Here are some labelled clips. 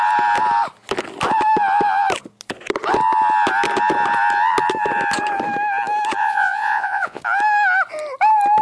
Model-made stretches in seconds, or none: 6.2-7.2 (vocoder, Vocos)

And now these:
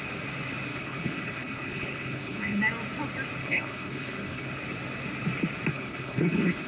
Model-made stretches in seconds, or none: 0.7-2.6 (codec, HILCodec); 3.4-4.5; 5.7-6.7

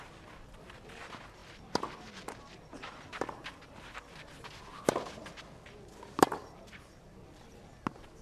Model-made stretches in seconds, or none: 6.4-7.6 (vocoder, BigVGAN v2)

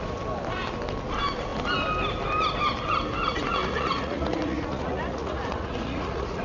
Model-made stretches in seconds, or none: 3.6-6.4 (vocoder, Vocos)